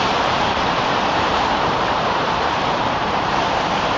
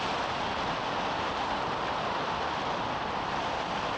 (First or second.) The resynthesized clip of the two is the first